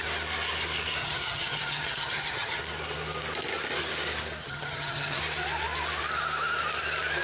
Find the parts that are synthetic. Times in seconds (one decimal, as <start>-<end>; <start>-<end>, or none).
1.0-2.6; 4.4-5.2